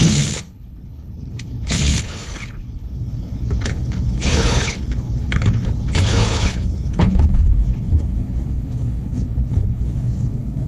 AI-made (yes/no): yes